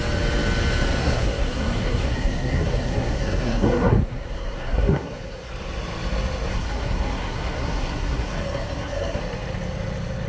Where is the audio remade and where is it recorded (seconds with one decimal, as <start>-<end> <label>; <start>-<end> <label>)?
0.0-1.0 recorded; 1.0-5.5 remade; 5.5-6.5 recorded; 6.5-9.2 remade; 9.2-10.3 recorded